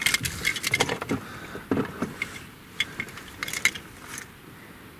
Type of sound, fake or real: real